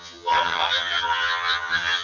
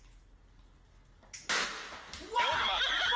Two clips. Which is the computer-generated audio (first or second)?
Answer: first